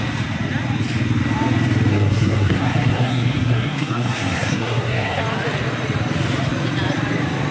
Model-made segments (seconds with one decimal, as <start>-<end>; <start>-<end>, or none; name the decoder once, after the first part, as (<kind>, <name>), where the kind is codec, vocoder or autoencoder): 1.9-5.2 (codec, SNAC)